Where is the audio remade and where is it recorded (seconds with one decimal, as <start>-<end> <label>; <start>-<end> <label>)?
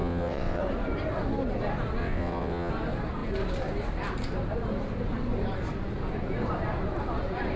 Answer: 0.0-0.6 remade; 0.6-2.0 recorded; 2.0-2.7 remade; 2.7-7.6 recorded